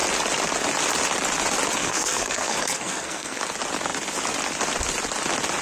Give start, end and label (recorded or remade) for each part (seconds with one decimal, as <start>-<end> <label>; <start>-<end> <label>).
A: 0.0-1.8 recorded; 1.8-3.4 remade; 3.4-5.6 recorded